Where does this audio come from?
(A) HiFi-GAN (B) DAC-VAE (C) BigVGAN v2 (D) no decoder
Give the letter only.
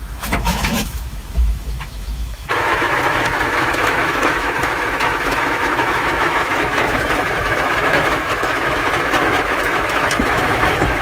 B